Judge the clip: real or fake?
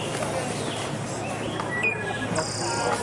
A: real